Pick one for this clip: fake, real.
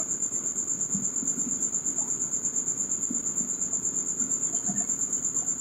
real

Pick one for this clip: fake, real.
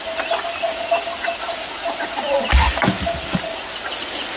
real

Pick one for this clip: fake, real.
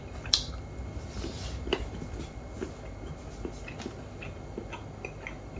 real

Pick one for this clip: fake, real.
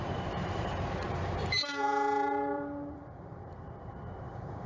fake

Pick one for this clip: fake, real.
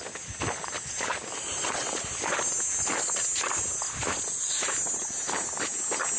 real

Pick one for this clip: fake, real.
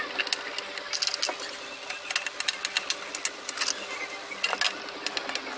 real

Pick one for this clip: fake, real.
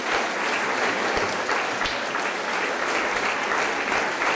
real